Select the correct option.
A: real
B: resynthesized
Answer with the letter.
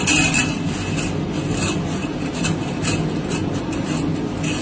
A